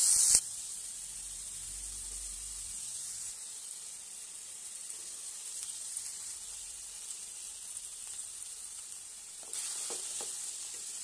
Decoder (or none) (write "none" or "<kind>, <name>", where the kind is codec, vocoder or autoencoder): none